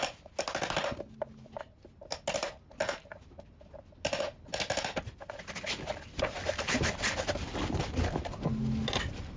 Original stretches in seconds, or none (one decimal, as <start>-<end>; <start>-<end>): 0.0-9.4